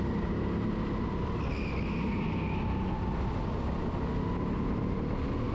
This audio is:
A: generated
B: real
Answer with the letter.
B